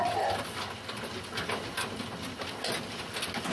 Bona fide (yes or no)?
yes